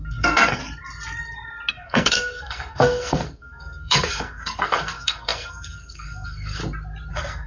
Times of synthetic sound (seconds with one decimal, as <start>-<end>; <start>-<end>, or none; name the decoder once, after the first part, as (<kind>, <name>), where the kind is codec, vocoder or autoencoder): 0.0-0.6 (codec, SNAC); 1.7-6.6; 7.1-7.5